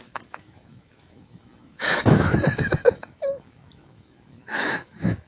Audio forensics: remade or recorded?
remade